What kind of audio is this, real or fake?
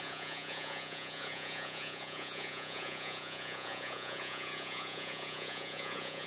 fake